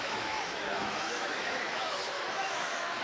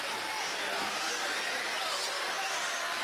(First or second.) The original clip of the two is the second